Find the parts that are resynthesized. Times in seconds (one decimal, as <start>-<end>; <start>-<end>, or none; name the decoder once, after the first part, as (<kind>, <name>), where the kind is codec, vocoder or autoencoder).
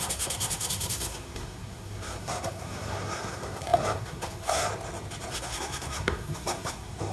0.0-4.7 (codec, SNAC); 5.3-7.1